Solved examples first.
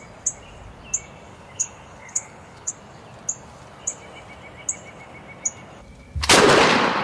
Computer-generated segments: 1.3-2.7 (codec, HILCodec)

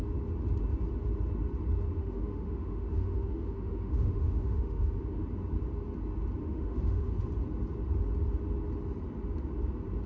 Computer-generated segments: 2.0-5.2 (autoencoder, DAC-VAE); 6.4-7.3

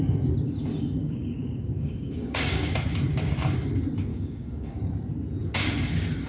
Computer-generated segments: 1.0-2.7 (codec, DAC); 4.1-4.9

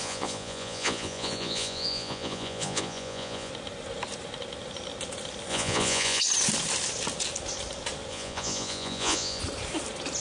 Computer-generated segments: 0.0-3.5 (vocoder, Vocos); 5.5-6.2; 8.1-9.4